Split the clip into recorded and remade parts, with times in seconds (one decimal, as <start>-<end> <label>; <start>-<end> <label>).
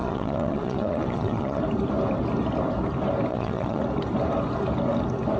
0.0-1.6 remade; 1.6-3.3 recorded; 3.3-3.8 remade; 3.8-5.4 recorded